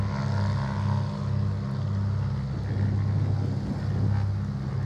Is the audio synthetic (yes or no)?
no